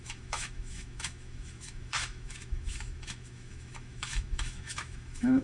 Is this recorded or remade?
remade